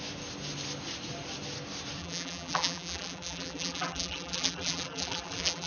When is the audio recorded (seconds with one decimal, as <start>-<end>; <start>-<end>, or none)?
0.0-2.0